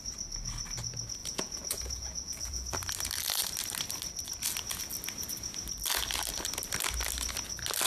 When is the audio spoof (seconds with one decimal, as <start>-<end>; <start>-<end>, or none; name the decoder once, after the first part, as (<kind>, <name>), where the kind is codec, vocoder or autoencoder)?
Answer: 1.2-2.7 (vocoder, Vocos)